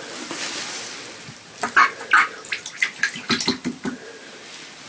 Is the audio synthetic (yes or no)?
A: no